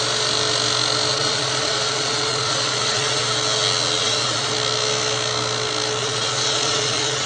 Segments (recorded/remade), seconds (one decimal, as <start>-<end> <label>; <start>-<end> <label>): 0.0-1.1 recorded; 1.1-3.2 remade; 3.2-4.0 recorded; 4.0-4.5 remade; 4.5-6.0 recorded; 6.0-7.3 remade